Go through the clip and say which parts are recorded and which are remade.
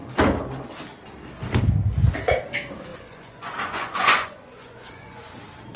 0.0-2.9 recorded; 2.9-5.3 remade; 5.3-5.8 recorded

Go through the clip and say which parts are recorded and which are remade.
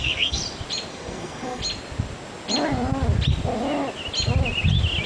0.0-0.4 remade; 0.4-0.9 recorded; 0.9-1.6 remade; 1.6-5.1 recorded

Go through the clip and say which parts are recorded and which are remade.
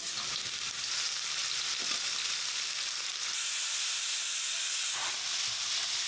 0.0-6.1 recorded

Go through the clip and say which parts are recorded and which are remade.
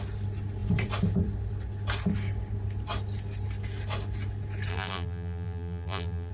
0.0-4.7 recorded; 4.7-6.3 remade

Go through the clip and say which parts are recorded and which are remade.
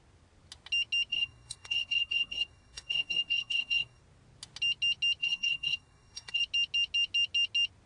0.0-1.1 recorded; 1.1-4.0 remade; 4.0-5.2 recorded; 5.2-6.4 remade; 6.4-7.9 recorded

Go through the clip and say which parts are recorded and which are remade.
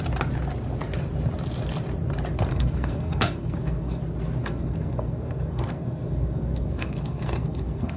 0.0-2.5 recorded; 2.5-4.0 remade; 4.0-4.4 recorded; 4.4-8.0 remade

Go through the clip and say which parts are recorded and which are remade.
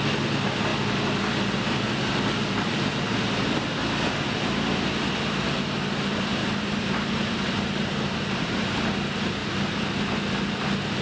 0.0-6.4 recorded; 6.4-8.9 remade; 8.9-9.4 recorded; 9.4-10.2 remade; 10.2-11.0 recorded